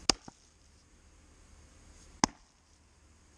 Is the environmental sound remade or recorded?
recorded